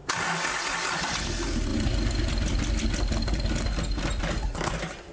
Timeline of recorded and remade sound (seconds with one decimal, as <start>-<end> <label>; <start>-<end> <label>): 0.0-5.1 recorded